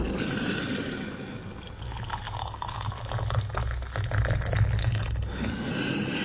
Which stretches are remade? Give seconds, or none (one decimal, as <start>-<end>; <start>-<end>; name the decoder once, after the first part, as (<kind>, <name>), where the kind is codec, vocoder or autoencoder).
2.4-2.9 (codec, HILCodec); 4.8-5.5